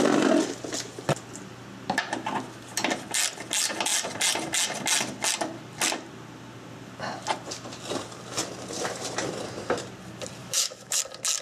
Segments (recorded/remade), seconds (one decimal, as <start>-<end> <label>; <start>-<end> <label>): 0.0-10.4 recorded; 10.4-11.0 remade; 11.0-11.4 recorded